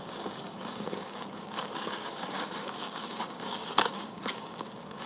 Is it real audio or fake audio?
fake